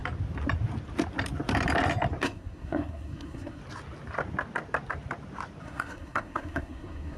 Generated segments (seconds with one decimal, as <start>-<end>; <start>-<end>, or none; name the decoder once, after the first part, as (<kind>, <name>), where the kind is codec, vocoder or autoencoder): 2.2-3.6 (codec, SNAC); 5.6-7.2